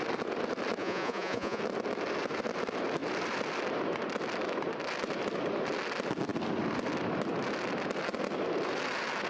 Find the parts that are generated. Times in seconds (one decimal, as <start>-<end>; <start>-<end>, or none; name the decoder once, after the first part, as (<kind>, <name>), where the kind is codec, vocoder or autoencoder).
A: 0.8-1.6 (vocoder, Vocos)